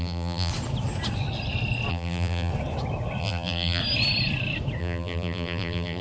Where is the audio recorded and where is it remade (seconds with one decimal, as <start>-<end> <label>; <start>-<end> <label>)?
0.0-0.5 remade; 0.5-1.9 recorded; 1.9-2.5 remade; 2.5-3.2 recorded; 3.2-3.8 remade; 3.8-4.8 recorded; 4.8-6.0 remade